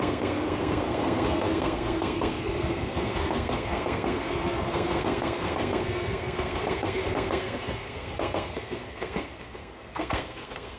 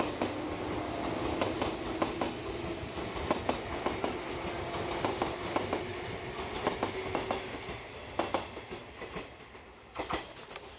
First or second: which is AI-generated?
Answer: first